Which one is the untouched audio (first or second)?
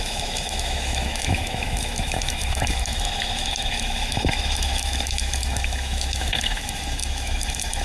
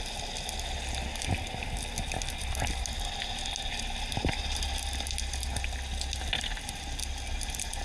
second